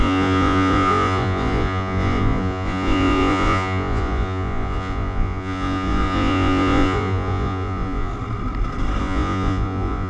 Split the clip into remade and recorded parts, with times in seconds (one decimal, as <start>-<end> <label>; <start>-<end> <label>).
0.0-8.1 remade; 8.1-9.0 recorded; 9.0-10.1 remade